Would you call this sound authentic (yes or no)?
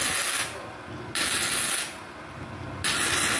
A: yes